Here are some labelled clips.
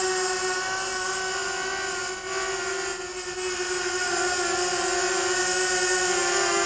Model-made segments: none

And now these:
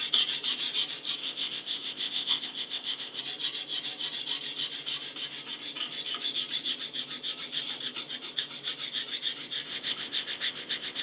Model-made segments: 1.2-3.2 (codec, ZipCodec); 9.7-11.0

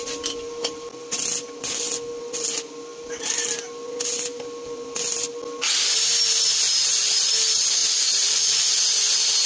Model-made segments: 7.8-8.6 (vocoder, BigVGAN v2)

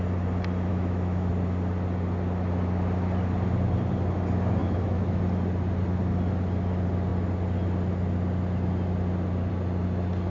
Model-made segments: 0.7-1.3 (autoencoder, DAC-VAE); 4.6-5.2

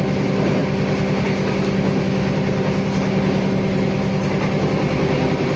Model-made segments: none